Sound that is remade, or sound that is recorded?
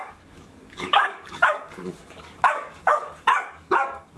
remade